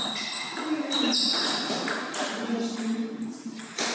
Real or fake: real